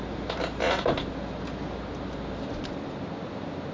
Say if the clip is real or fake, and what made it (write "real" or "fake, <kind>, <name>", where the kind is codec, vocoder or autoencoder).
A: real